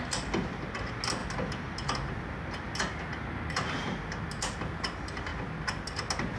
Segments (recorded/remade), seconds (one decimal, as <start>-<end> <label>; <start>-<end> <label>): 0.0-6.4 recorded

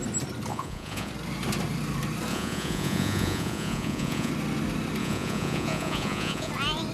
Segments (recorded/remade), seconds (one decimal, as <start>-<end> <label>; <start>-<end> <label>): 0.0-0.5 recorded; 0.5-1.1 remade; 1.1-2.3 recorded; 2.3-4.3 remade; 4.3-5.0 recorded; 5.0-6.5 remade; 6.5-6.9 recorded